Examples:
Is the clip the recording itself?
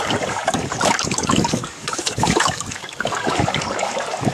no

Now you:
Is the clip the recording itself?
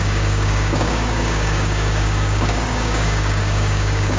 no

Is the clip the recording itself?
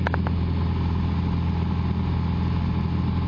yes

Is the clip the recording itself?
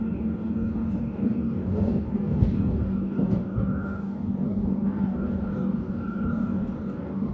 no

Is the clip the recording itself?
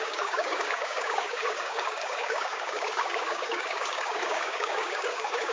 no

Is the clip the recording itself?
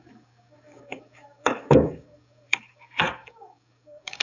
no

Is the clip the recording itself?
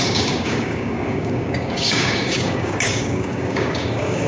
no